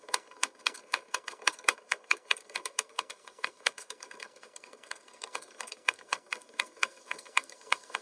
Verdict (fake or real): fake